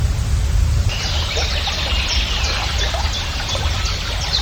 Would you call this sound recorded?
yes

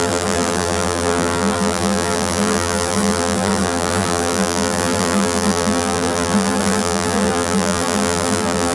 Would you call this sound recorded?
no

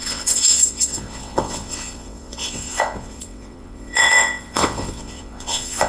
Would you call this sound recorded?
no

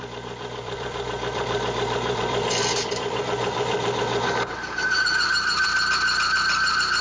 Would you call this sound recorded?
no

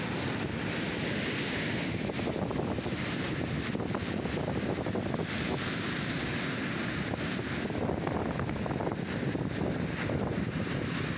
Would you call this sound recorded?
yes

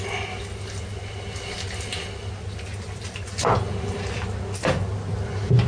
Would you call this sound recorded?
yes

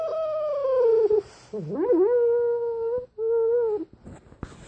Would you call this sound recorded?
yes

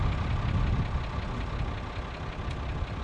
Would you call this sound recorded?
yes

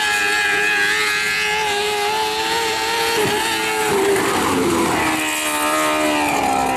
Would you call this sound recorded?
yes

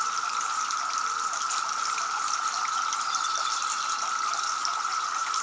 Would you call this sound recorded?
yes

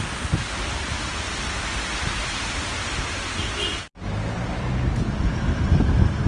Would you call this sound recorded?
yes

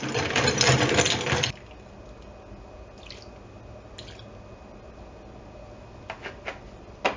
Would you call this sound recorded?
yes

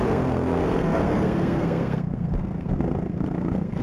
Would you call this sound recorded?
no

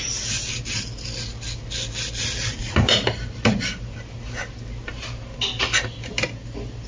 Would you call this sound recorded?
yes